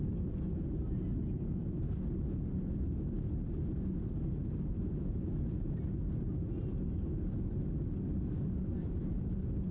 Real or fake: real